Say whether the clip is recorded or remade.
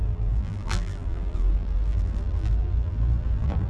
remade